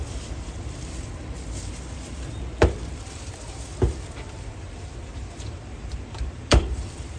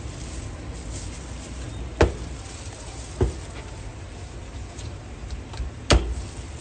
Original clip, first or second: second